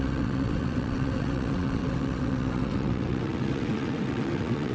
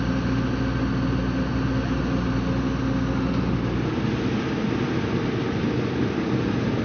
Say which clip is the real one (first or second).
second